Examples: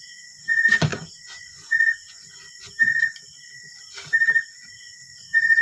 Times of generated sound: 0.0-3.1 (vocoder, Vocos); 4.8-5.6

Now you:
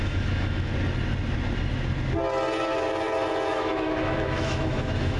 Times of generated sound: 0.0-0.7 (autoencoder, DAC-VAE); 3.5-5.2

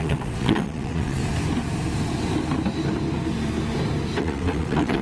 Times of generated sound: 0.0-1.2 (vocoder, WaveNeXt); 4.2-5.0

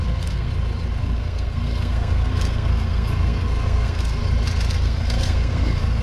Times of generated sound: 0.0-0.5 (codec, SNAC); 1.0-4.2; 4.7-6.0

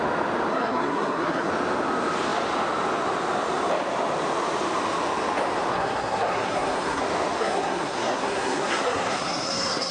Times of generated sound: 0.5-1.5 (codec, SNAC); 5.7-7.0; 7.4-9.9

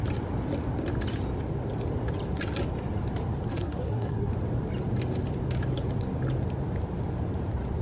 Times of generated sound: 3.5-4.3 (codec, SNAC)

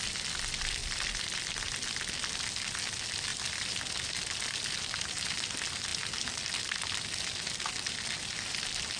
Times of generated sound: 0.8-1.7 (vocoder, BigVGAN v2); 3.3-3.8

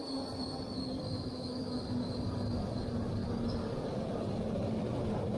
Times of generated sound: 1.1-1.8 (autoencoder, DAC-VAE)